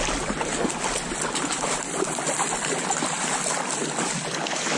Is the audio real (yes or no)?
yes